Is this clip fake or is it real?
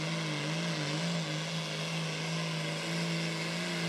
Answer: real